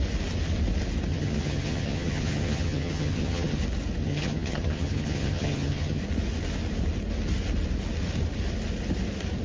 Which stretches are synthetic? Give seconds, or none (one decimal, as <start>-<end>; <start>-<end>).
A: 1.1-3.6; 4.0-6.0